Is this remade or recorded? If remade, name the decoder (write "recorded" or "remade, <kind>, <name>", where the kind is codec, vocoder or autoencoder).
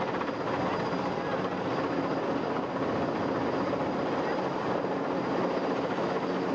recorded